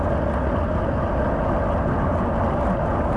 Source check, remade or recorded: recorded